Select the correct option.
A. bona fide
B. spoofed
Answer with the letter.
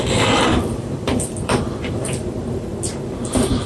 B